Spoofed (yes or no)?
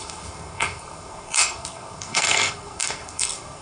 yes